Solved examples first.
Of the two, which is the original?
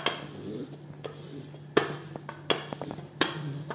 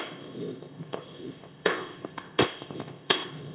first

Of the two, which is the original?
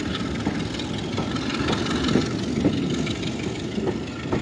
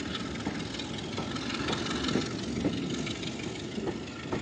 second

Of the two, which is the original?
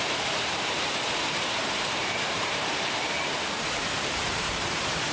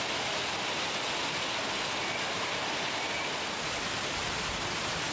second